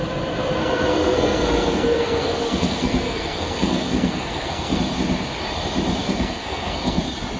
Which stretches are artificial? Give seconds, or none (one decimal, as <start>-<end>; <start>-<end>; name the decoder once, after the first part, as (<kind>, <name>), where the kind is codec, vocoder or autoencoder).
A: 0.6-4.8 (codec, SNAC); 6.0-7.0